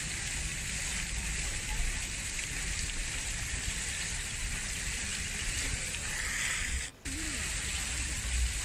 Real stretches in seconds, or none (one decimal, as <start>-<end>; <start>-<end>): 0.0-0.5; 4.1-5.1; 6.1-8.6